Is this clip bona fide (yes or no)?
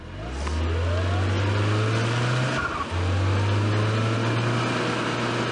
yes